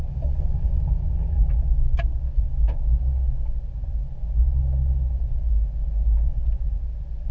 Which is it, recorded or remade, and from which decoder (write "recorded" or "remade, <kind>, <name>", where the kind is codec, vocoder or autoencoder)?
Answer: recorded